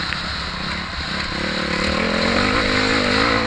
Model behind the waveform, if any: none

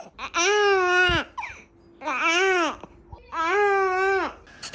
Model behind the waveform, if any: none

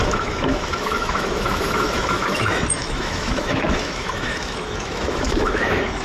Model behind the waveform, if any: autoencoder, DAC-VAE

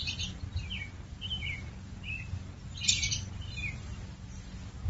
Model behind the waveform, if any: none